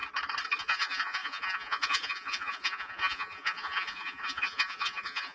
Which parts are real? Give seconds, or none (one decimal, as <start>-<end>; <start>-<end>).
0.0-0.6